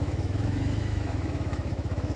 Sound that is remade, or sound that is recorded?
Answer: remade